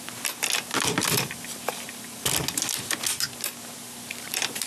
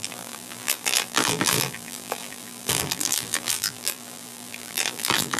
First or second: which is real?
first